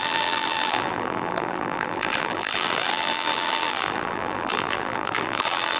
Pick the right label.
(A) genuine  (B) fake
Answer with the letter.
B